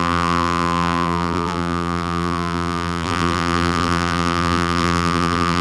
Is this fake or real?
fake